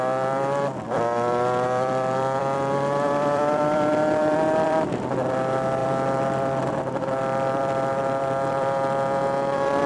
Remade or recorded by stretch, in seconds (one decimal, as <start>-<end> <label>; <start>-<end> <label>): 0.0-9.9 remade